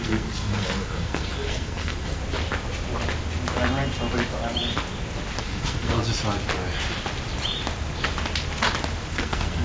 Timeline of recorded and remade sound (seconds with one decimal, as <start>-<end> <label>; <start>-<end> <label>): 0.0-2.2 remade; 2.2-5.4 recorded; 5.4-6.0 remade; 6.0-9.1 recorded; 9.1-9.6 remade